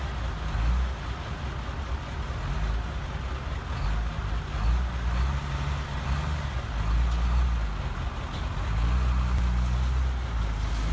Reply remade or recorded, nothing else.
recorded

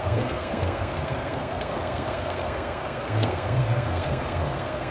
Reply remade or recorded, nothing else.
remade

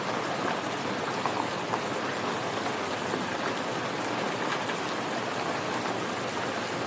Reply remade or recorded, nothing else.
recorded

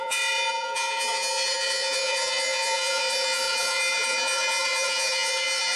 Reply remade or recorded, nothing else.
remade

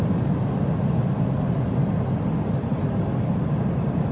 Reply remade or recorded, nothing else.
recorded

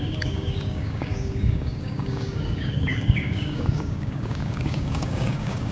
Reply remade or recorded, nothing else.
remade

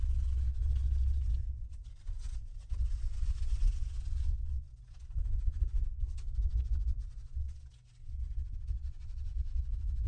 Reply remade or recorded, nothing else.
recorded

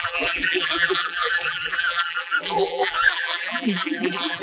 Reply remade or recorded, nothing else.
remade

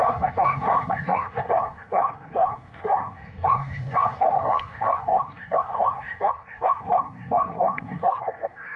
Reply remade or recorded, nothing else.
remade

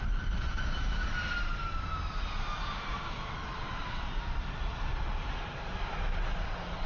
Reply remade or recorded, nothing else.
recorded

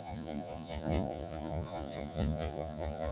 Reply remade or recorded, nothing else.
remade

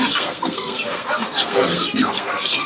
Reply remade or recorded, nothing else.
remade